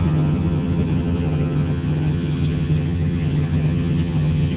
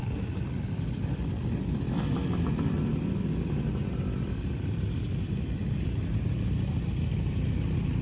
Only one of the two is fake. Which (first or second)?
first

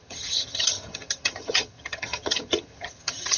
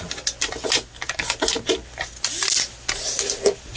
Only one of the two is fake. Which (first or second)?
first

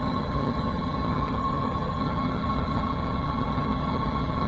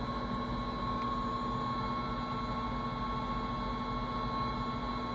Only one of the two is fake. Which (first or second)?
first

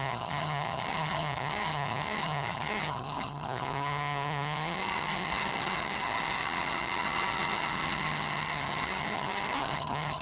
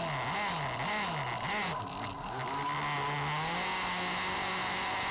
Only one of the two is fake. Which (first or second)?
first